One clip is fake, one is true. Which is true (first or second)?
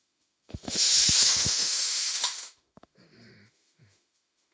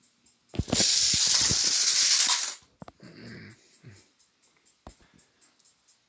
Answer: second